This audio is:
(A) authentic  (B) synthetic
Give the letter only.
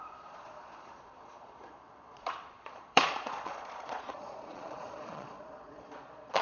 B